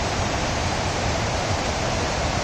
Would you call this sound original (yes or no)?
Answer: no